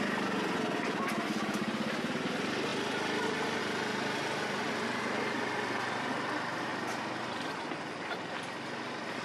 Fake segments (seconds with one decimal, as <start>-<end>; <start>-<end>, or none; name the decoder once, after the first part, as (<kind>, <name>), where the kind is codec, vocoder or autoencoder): none